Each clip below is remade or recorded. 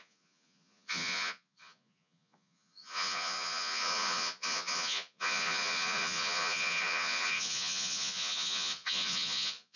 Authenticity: remade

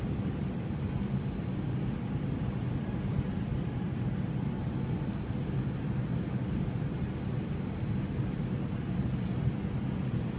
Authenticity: recorded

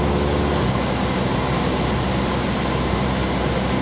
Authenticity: recorded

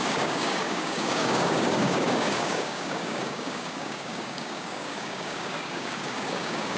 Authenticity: remade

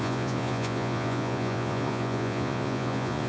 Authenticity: remade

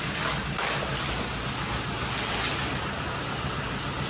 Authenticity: recorded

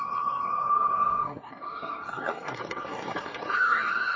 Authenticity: remade